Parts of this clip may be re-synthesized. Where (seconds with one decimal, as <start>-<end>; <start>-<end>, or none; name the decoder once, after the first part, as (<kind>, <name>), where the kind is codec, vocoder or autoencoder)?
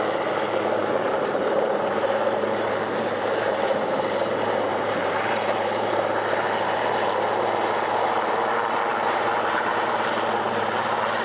0.8-4.3 (vocoder, BigVGAN v2); 4.7-5.9; 8.9-10.0